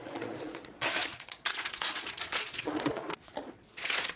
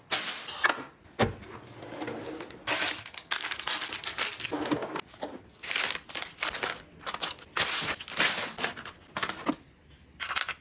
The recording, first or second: second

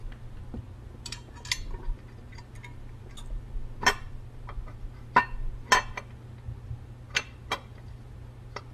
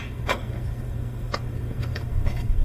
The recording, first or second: first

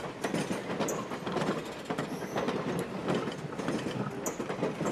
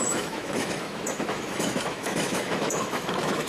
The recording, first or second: first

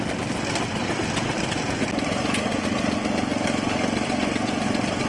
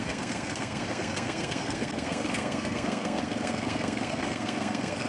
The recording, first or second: first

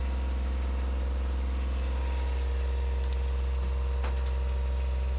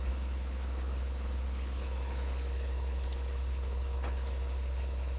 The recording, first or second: first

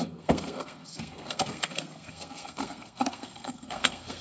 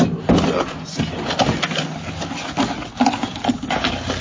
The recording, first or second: second